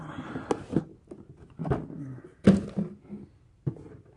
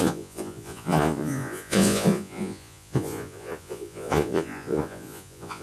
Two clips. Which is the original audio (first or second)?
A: first